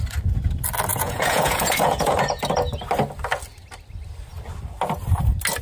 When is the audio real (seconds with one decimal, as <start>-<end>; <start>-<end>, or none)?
0.0-0.9; 2.4-5.6